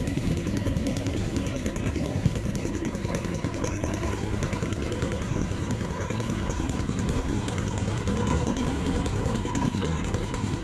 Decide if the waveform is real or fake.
fake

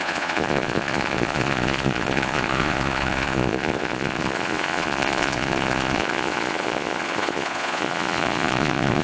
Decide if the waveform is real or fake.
fake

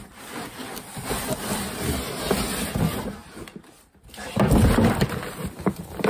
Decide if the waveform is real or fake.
real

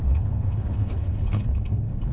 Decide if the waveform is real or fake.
fake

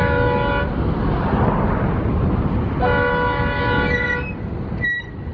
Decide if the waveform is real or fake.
real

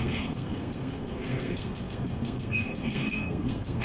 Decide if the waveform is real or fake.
fake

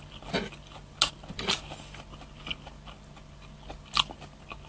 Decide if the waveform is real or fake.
real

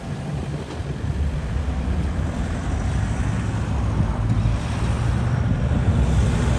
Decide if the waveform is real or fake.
real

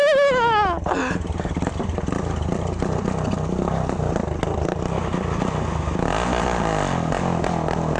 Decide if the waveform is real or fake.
real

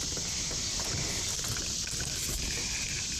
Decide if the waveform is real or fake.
real